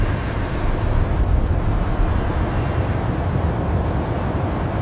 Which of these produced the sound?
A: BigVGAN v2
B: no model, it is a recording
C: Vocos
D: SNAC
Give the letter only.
B